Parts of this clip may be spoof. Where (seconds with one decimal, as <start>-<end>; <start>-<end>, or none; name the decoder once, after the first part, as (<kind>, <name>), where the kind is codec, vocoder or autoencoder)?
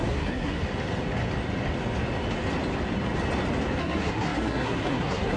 0.0-0.6 (codec, SNAC); 3.8-5.4